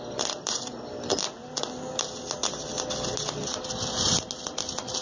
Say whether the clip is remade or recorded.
recorded